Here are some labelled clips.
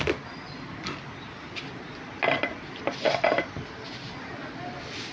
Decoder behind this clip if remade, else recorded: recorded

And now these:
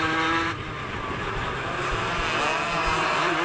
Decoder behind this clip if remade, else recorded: recorded